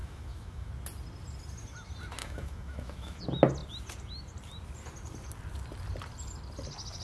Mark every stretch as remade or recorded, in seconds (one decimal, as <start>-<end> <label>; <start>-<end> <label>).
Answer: 0.0-0.7 remade; 0.7-2.2 recorded; 2.2-3.2 remade; 3.2-7.0 recorded